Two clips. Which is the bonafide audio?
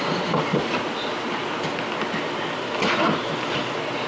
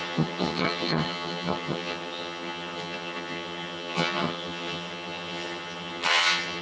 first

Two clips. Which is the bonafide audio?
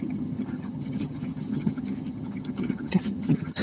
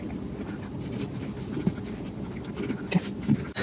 second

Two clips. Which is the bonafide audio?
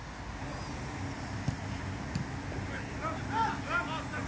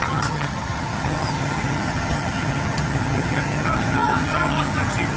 first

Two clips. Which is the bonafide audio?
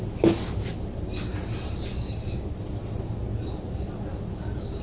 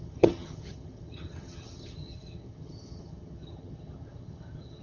first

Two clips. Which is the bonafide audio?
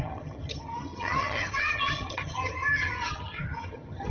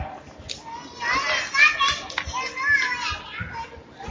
second